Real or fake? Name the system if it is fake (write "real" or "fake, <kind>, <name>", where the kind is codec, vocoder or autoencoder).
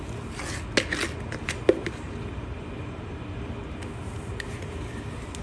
real